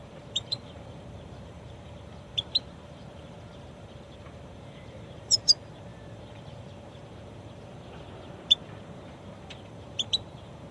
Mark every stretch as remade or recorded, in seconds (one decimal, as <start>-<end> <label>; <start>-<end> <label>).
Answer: 0.0-10.7 remade